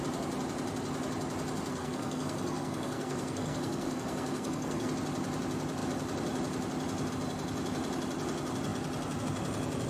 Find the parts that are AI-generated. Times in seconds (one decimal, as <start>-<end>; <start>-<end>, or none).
1.7-4.9